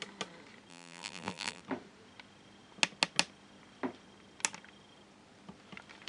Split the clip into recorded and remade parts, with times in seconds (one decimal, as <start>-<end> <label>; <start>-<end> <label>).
0.0-0.7 recorded; 0.7-1.6 remade; 1.6-6.1 recorded